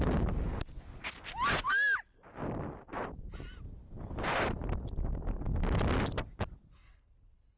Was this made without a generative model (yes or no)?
yes